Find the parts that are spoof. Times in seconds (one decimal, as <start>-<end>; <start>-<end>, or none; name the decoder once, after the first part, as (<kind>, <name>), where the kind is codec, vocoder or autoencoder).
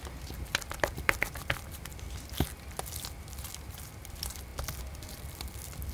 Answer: 0.0-1.9 (vocoder, BigVGAN v2); 3.4-4.5; 5.1-5.9